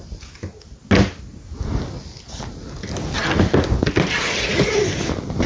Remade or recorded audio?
recorded